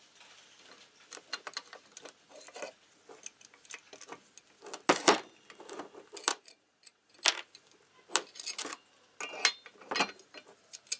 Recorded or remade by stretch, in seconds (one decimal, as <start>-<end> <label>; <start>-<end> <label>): 0.0-6.3 recorded; 6.3-7.1 remade; 7.1-11.0 recorded